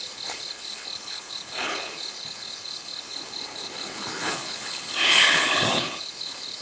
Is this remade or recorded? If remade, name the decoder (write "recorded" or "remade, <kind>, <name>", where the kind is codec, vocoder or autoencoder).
remade, codec, HILCodec